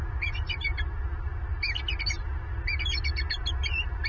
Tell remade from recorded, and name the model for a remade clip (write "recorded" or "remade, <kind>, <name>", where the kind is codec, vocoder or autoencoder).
recorded